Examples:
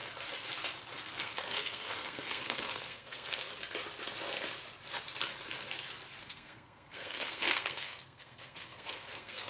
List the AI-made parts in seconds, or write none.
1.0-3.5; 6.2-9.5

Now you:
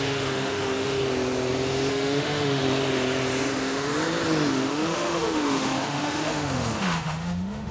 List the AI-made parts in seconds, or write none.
0.0-1.0; 1.9-2.6; 3.5-3.9; 4.5-7.7

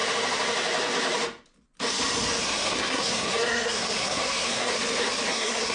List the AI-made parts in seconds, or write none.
2.4-4.7; 5.3-5.7